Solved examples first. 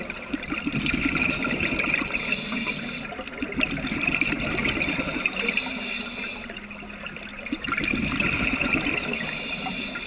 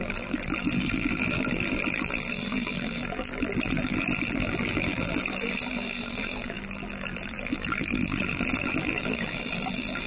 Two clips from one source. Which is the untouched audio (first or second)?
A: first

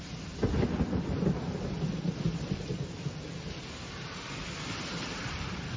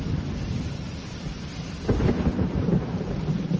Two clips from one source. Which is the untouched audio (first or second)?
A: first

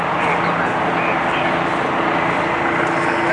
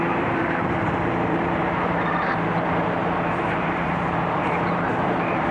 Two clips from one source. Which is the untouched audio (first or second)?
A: first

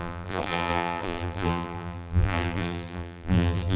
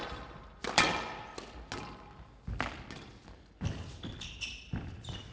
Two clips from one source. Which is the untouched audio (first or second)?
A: second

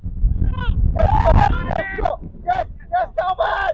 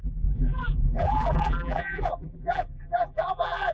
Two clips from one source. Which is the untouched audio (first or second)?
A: first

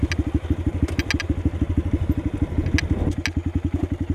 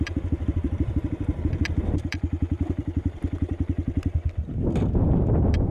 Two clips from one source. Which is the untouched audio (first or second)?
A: first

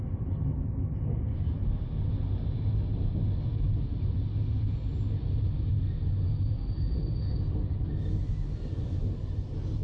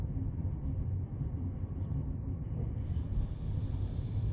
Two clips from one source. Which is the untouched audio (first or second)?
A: first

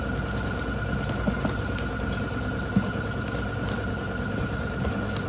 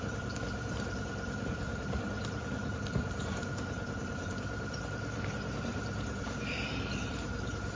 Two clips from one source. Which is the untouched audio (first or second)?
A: first